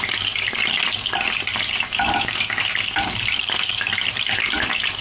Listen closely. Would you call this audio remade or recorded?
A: recorded